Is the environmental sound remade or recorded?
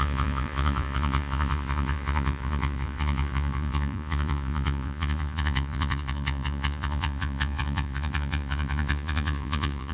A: remade